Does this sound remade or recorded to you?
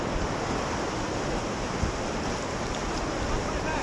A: recorded